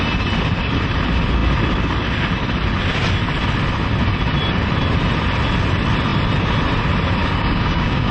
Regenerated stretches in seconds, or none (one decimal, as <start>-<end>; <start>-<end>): 7.2-8.1